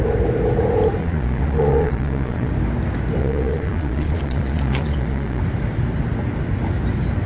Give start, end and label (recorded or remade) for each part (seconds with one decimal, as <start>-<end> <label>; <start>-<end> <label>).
0.0-1.0 recorded; 1.0-2.5 remade; 2.5-3.2 recorded; 3.2-5.4 remade; 5.4-7.3 recorded